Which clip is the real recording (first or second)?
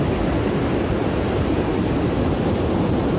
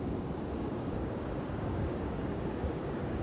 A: first